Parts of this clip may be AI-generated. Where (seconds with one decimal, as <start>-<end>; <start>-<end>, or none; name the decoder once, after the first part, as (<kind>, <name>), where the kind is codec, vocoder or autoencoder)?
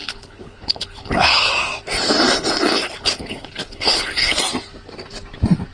0.0-1.5 (codec, HILCodec); 2.8-4.4